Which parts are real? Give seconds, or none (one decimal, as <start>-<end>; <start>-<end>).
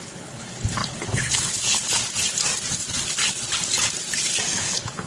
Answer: 2.0-4.6